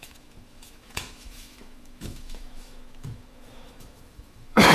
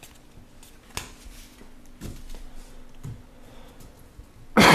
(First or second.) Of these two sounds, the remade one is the first